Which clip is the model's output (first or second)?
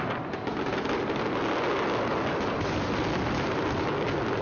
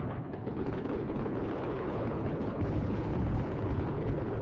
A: second